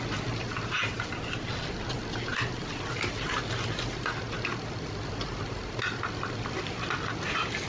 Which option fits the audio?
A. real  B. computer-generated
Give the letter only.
A